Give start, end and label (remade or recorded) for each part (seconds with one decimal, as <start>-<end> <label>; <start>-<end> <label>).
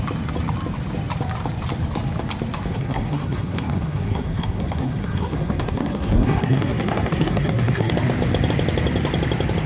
0.0-2.7 recorded; 2.7-7.9 remade; 7.9-9.7 recorded